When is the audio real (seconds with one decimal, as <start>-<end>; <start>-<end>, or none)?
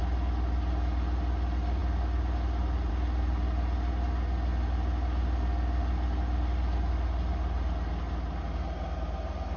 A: 0.0-9.6